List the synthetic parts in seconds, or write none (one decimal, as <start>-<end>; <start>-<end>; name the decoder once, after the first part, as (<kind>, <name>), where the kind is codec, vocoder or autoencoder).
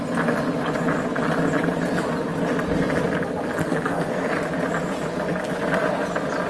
3.6-4.3 (codec, SNAC)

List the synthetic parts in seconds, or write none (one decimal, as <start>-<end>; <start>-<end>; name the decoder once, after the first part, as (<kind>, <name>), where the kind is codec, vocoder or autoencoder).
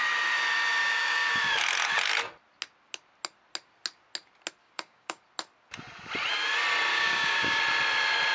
0.8-1.4 (codec, DAC); 4.6-5.2; 6.9-7.6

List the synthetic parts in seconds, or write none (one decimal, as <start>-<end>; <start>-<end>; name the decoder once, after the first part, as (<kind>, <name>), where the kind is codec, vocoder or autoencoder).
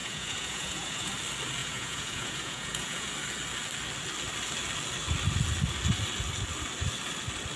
0.0-1.1 (vocoder, Vocos); 1.6-3.1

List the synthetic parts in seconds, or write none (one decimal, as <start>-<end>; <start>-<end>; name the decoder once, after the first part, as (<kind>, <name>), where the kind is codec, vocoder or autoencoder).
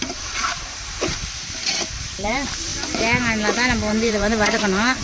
0.0-2.7 (vocoder, BigVGAN v2); 3.9-5.0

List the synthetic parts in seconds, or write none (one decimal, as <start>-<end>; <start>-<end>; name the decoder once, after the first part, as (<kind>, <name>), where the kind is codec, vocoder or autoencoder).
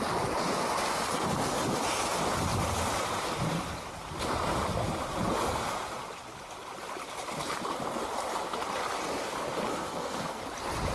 9.7-10.4 (codec, SNAC)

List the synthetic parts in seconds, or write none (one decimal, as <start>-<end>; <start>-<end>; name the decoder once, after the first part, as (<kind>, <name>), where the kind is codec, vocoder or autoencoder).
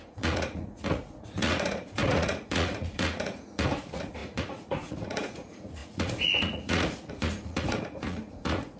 0.0-8.8 (vocoder, Vocos)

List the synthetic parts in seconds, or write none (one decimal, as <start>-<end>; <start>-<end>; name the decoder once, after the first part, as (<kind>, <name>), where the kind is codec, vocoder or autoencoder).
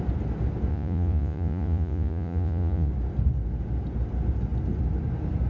0.7-2.9 (vocoder, Vocos)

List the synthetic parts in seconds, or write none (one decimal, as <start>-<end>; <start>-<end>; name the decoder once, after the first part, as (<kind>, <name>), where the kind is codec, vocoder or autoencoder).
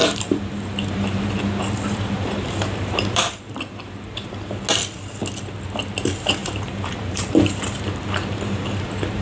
0.0-4.5 (vocoder, BigVGAN v2); 6.4-9.2